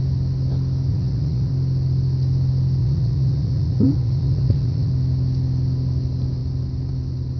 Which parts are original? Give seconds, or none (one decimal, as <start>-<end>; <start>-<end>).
0.0-0.9; 1.5-2.8; 4.9-7.4